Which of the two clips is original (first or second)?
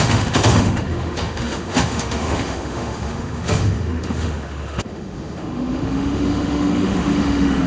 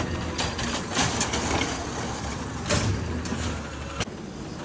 second